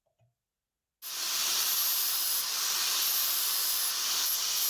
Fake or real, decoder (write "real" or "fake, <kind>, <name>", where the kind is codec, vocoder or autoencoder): real